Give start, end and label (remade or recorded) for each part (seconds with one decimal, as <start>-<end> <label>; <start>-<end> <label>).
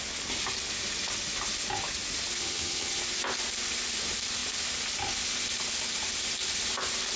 0.0-2.4 recorded; 2.4-3.0 remade; 3.0-7.2 recorded